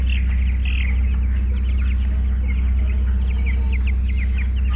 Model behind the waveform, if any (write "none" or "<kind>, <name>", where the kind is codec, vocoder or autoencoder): none